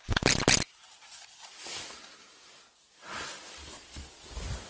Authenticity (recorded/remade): recorded